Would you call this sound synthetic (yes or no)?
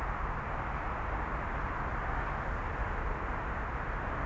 no